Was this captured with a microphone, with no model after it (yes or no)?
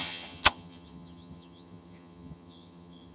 no